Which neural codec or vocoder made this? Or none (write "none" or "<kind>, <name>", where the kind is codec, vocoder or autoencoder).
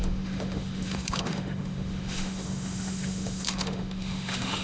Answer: autoencoder, DAC-VAE